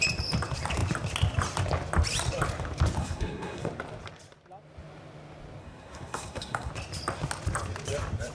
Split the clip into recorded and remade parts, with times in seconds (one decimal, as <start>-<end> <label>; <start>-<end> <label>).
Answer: 0.0-3.0 recorded; 3.0-3.7 remade; 3.7-5.6 recorded; 5.6-6.7 remade; 6.7-8.3 recorded